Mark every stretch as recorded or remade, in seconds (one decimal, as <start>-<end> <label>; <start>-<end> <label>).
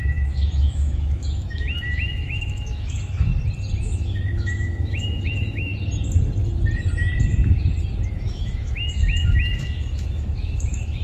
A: 0.0-3.3 remade; 3.3-3.8 recorded; 3.8-5.7 remade; 5.7-8.1 recorded; 8.1-11.0 remade